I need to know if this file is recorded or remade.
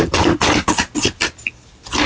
recorded